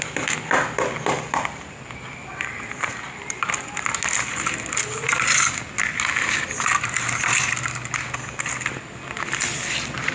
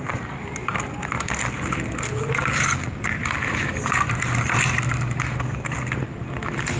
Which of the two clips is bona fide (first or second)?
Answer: first